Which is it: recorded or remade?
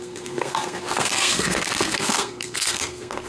remade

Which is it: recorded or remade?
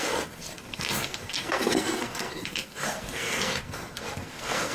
remade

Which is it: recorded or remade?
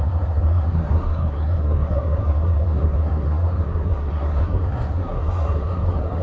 remade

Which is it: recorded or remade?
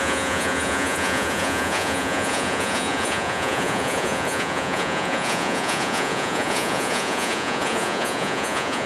remade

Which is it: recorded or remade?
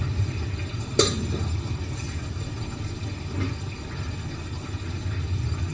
recorded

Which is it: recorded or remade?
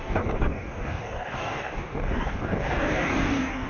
remade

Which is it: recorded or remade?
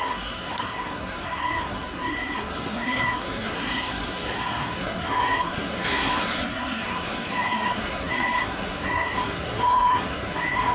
remade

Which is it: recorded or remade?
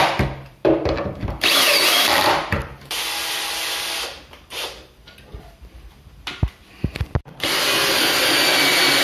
remade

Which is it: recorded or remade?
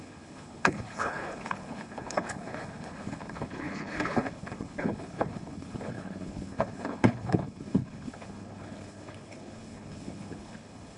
remade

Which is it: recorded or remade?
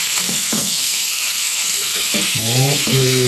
remade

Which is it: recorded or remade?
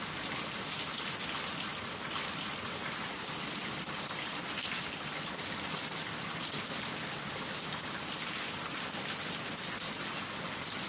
recorded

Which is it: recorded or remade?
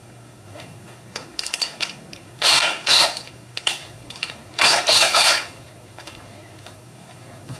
remade